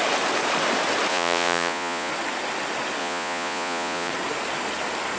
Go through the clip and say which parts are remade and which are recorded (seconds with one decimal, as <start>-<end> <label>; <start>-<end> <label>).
0.0-1.1 recorded; 1.1-2.1 remade; 2.1-3.0 recorded; 3.0-4.1 remade; 4.1-5.2 recorded